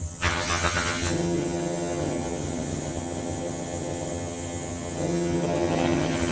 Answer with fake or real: fake